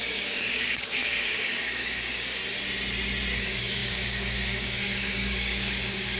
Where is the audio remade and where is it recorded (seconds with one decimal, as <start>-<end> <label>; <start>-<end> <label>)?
0.0-2.4 remade; 2.4-3.4 recorded; 3.4-6.2 remade